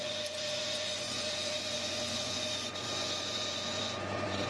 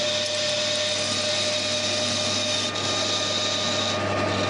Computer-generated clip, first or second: first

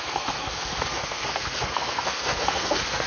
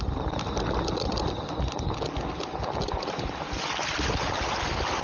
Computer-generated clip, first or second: first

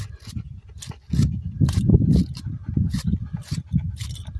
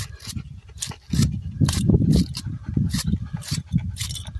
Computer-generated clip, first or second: second